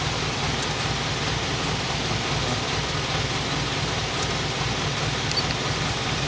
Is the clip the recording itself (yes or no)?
yes